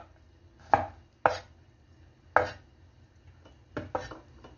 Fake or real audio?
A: real